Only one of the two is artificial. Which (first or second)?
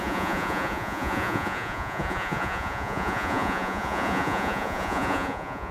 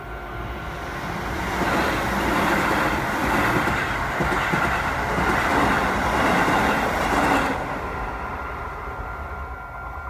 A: first